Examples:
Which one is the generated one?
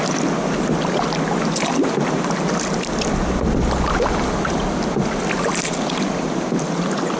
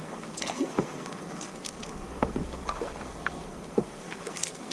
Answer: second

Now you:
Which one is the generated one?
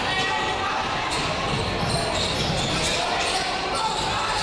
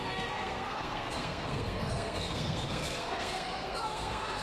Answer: second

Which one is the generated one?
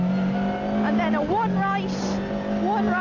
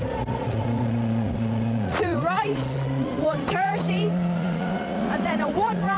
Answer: second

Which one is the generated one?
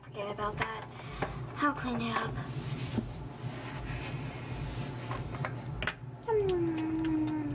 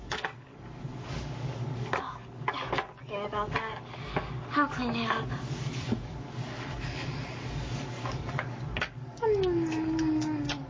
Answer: second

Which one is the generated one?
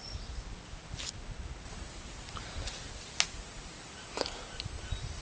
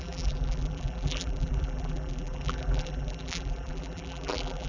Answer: second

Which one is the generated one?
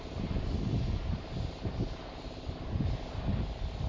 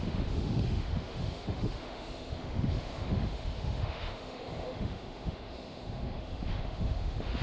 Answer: second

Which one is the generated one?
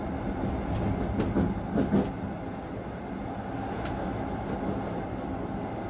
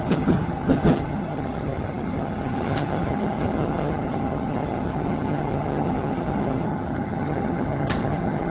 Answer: second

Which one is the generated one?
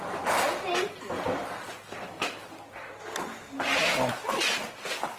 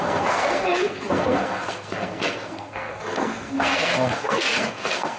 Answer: second